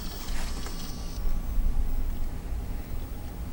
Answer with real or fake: real